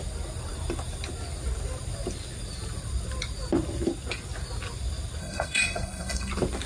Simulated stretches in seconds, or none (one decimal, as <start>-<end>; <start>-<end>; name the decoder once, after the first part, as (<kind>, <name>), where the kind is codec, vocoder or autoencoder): 5.2-6.3 (codec, SNAC)